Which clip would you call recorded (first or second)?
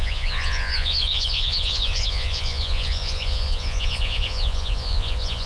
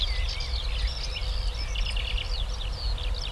second